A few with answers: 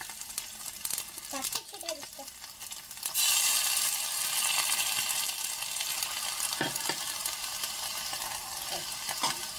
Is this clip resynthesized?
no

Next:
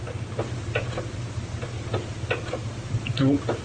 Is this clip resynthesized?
no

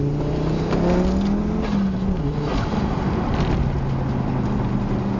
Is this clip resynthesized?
no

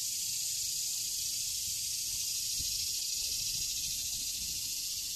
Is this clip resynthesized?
no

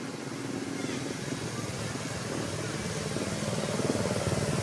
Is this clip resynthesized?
no